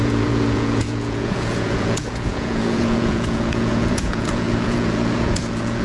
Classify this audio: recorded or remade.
remade